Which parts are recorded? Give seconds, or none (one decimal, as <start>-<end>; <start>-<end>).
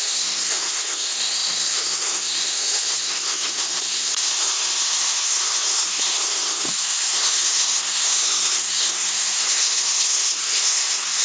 none